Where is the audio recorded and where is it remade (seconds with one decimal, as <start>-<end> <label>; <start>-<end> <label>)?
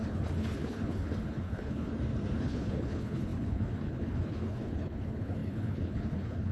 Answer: 0.0-1.9 remade; 1.9-2.4 recorded; 2.4-6.5 remade